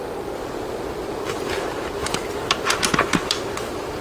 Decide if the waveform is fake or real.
real